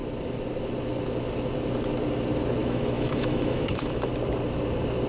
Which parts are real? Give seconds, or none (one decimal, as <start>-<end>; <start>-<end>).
0.0-2.6; 4.1-5.1